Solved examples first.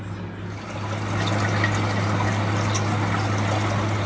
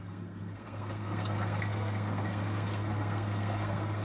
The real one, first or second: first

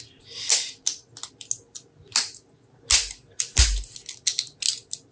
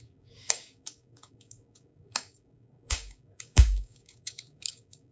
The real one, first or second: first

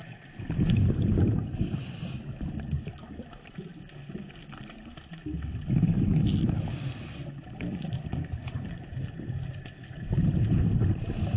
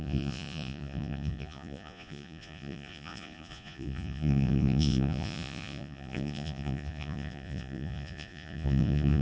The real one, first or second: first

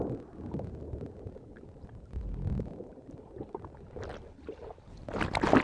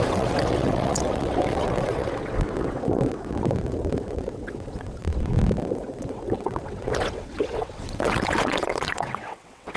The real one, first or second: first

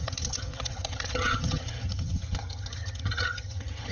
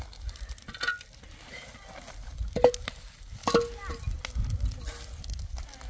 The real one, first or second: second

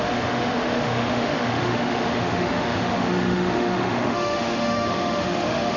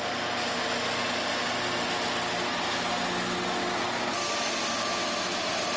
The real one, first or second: second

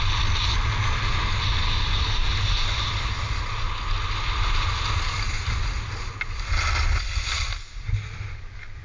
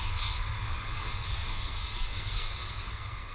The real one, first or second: first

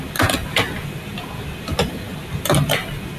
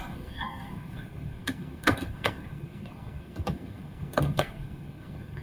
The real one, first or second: first